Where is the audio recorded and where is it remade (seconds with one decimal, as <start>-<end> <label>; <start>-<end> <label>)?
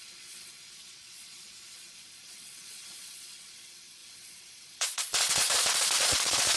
0.0-6.6 remade